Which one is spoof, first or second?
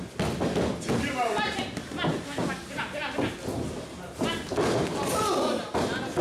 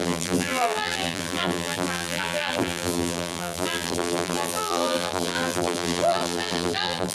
second